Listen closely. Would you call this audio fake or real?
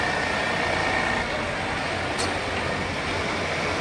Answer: real